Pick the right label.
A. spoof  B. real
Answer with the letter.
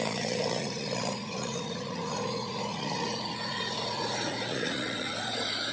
A